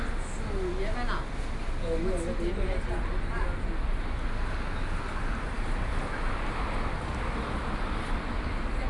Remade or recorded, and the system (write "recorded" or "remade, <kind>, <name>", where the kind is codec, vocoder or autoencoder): recorded